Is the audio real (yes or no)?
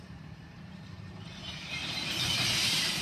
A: no